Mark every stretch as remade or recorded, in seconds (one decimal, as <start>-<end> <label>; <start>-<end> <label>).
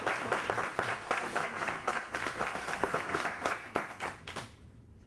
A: 0.0-0.9 recorded; 0.9-4.0 remade; 4.0-5.1 recorded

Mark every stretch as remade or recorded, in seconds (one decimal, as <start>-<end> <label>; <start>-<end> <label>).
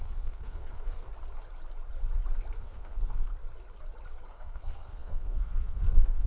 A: 0.0-1.1 remade; 1.1-2.6 recorded; 2.6-3.3 remade; 3.3-4.3 recorded; 4.3-6.3 remade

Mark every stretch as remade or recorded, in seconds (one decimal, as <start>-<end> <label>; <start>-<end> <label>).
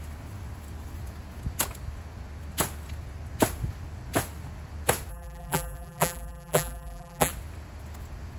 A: 0.0-5.1 recorded; 5.1-7.3 remade; 7.3-8.4 recorded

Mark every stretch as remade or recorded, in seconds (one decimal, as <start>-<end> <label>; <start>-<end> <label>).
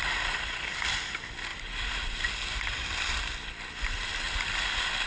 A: 0.0-5.1 recorded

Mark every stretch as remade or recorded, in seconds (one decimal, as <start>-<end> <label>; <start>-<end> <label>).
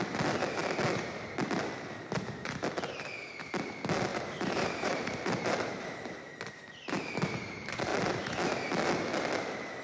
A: 0.0-4.1 recorded; 4.1-7.1 remade; 7.1-9.8 recorded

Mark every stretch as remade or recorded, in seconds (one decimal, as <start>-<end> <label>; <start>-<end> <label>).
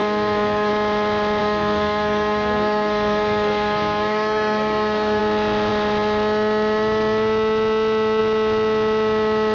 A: 0.0-0.7 remade; 0.7-1.4 recorded; 1.4-5.2 remade; 5.2-9.5 recorded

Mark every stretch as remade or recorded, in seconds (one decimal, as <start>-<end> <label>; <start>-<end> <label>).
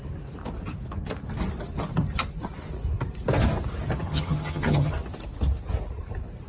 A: 0.0-4.0 recorded; 4.0-4.9 remade; 4.9-6.5 recorded